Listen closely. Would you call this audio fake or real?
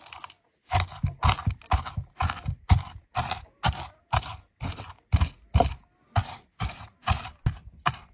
real